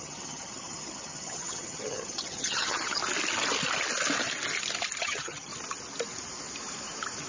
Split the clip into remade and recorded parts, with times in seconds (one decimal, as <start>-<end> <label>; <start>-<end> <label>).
0.0-3.0 remade; 3.0-5.0 recorded; 5.0-5.5 remade; 5.5-7.3 recorded